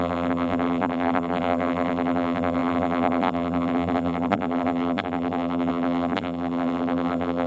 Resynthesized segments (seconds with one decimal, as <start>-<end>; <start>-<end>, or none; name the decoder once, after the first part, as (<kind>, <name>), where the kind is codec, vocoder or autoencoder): 0.0-7.5 (vocoder, BigVGAN v2)